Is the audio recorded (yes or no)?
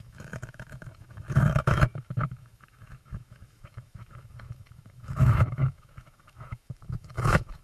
no